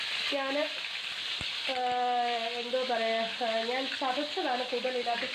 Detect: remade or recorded recorded